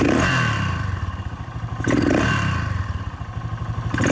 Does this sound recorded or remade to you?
recorded